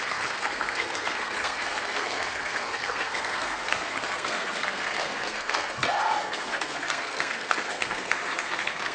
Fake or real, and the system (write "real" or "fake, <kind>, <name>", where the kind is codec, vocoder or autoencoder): fake, codec, SNAC